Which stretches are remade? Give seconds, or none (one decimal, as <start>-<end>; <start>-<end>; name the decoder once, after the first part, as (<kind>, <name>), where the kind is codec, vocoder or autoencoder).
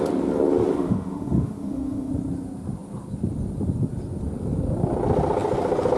0.7-2.1 (autoencoder, DAC-VAE)